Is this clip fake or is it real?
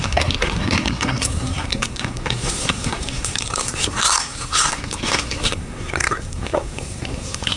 fake